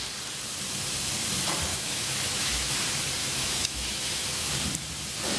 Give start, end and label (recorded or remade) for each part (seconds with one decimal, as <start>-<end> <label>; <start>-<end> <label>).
0.0-1.7 recorded; 1.7-2.7 remade; 2.7-3.2 recorded; 3.2-4.5 remade; 4.5-5.4 recorded